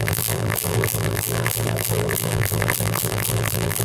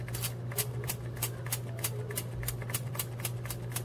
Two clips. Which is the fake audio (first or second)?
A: first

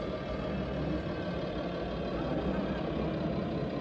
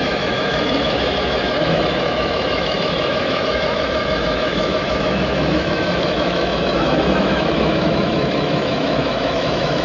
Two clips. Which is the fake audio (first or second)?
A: second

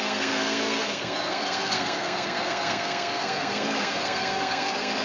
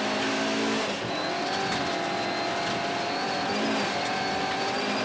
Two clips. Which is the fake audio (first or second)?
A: first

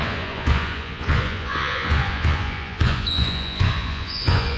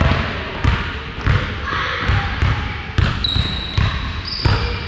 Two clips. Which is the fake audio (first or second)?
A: first